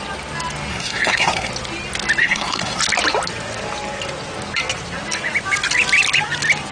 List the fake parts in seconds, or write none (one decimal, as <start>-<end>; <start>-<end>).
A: 0.7-1.5; 2.2-2.8